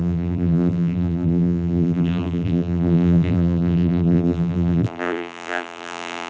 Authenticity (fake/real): fake